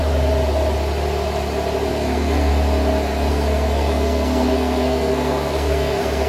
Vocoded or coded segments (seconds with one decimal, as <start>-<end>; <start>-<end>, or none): 1.9-2.5; 3.3-6.3